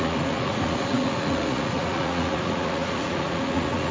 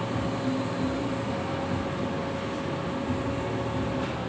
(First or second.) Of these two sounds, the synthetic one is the first